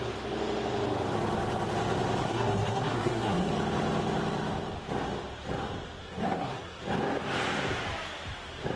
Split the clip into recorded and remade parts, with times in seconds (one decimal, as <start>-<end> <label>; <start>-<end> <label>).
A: 0.0-2.2 recorded; 2.2-3.5 remade; 3.5-6.0 recorded; 6.0-6.8 remade; 6.8-8.8 recorded